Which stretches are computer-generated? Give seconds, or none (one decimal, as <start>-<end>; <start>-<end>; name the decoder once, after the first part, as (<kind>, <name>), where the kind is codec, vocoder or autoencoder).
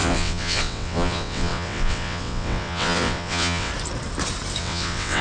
0.0-3.7 (vocoder, WaveNeXt); 4.6-5.2